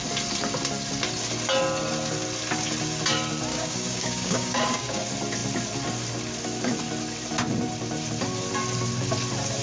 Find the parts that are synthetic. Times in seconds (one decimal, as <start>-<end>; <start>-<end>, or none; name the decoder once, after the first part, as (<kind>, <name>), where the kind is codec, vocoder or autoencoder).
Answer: 3.5-5.0 (codec, DAC)